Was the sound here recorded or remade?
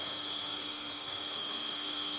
remade